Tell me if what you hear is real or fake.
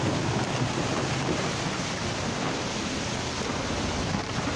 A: real